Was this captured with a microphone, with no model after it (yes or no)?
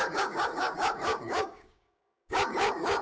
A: no